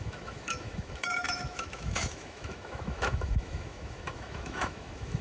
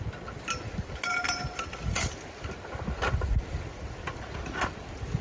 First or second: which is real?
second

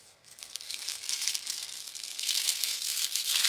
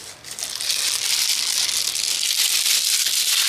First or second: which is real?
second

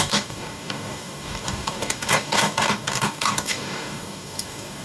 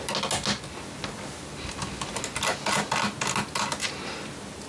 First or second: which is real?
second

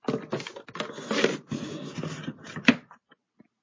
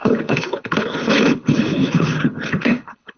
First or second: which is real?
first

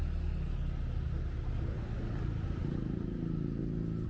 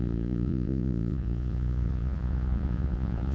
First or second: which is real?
first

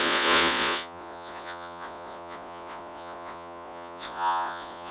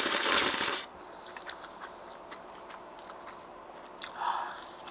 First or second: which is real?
second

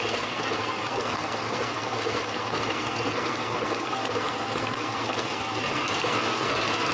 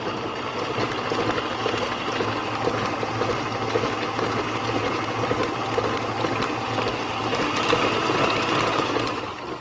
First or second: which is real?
second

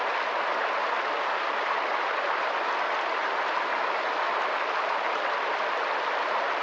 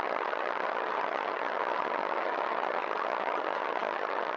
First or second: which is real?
first